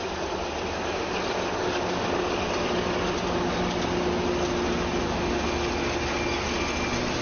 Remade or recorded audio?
recorded